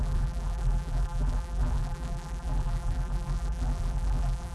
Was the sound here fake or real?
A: fake